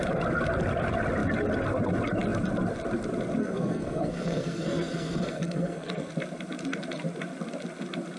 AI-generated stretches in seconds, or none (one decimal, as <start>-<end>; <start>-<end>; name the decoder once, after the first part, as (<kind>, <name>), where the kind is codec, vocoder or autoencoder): 3.4-6.1 (codec, SNAC)